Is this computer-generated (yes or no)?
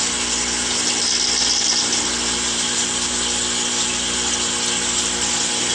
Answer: no